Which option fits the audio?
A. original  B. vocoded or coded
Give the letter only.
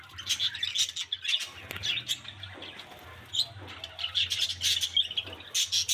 A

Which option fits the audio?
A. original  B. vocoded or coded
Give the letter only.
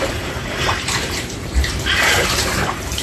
B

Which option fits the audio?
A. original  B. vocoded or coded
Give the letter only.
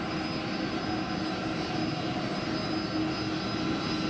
A